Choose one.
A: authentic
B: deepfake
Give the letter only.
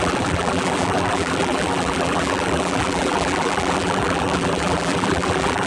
B